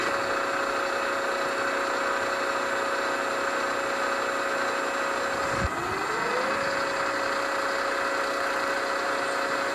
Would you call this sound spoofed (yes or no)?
no